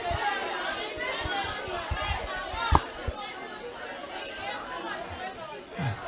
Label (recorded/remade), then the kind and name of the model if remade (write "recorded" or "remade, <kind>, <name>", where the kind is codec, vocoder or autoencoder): recorded